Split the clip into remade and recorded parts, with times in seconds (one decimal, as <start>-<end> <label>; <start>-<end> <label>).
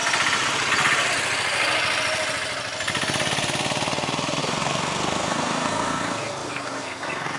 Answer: 0.0-4.4 recorded; 4.4-7.4 remade